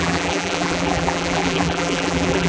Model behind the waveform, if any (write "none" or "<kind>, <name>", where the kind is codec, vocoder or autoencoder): vocoder, BigVGAN v2